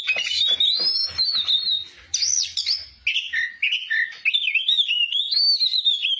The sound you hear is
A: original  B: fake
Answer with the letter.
A